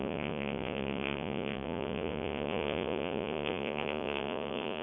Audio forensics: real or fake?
fake